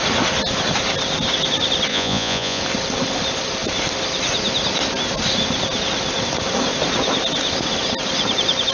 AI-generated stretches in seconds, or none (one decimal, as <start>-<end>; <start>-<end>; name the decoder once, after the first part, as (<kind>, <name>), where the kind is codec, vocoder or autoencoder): 1.9-2.6 (vocoder, Vocos)